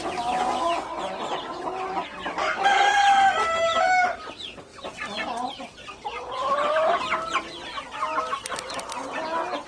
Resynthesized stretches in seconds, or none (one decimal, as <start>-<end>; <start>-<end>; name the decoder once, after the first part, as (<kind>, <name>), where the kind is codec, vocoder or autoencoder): none